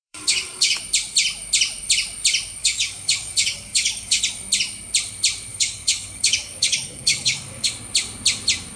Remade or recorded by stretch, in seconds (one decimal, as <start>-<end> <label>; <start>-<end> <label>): 0.0-0.8 remade; 0.8-2.6 recorded; 2.6-4.2 remade; 4.2-5.5 recorded; 5.5-7.7 remade; 7.7-8.8 recorded